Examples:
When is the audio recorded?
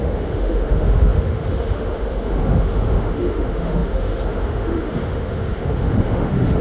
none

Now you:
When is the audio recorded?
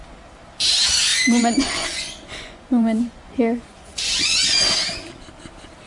0.0-1.1; 4.6-5.9